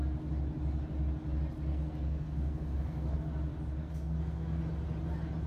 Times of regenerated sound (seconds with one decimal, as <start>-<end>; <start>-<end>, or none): 1.7-3.2; 3.8-4.6